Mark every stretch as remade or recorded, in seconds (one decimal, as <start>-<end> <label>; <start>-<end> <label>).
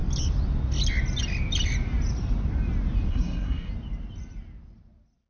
0.0-3.1 recorded; 3.1-3.7 remade; 3.7-5.3 recorded